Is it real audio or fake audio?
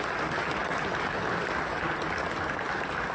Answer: real